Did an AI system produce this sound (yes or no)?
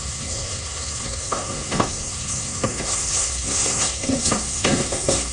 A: yes